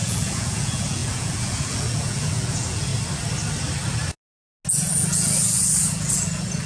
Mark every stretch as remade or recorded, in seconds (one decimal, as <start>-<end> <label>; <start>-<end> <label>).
0.0-2.9 remade; 2.9-4.7 recorded; 4.7-6.7 remade